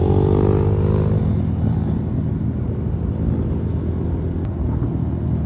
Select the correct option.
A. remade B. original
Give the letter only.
B